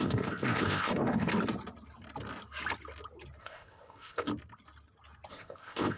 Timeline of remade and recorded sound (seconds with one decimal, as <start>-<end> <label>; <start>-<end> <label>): 0.0-1.3 remade; 1.3-3.4 recorded; 3.4-4.3 remade; 4.3-5.3 recorded; 5.3-6.0 remade